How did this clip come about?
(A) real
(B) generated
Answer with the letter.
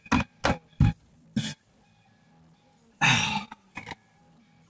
A